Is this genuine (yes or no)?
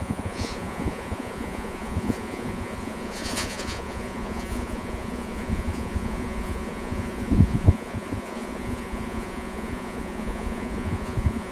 no